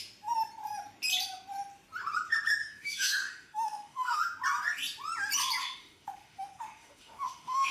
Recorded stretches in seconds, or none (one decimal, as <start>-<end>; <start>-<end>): 0.0-2.6; 4.2-5.6